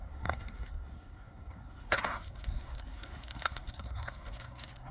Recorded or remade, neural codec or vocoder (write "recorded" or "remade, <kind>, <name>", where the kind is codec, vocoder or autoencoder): remade, codec, SNAC